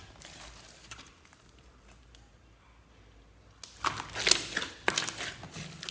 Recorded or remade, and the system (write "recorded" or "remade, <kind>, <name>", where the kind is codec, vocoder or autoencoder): recorded